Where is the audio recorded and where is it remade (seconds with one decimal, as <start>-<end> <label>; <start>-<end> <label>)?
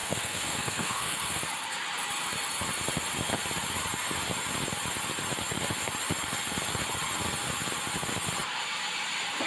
0.0-1.4 remade; 1.4-9.5 recorded